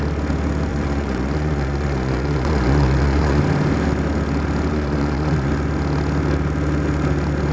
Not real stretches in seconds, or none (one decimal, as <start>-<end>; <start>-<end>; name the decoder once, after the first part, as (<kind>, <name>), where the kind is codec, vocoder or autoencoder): 0.7-3.4 (vocoder, Vocos); 4.7-5.5